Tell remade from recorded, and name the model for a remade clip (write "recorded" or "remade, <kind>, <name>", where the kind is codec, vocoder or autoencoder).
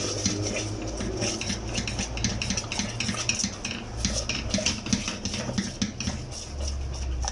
recorded